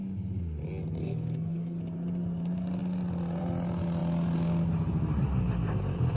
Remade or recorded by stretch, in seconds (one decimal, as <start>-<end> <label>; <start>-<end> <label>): 0.0-1.0 recorded; 1.0-1.8 remade; 1.8-6.2 recorded